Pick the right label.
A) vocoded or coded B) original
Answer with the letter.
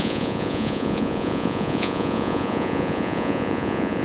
A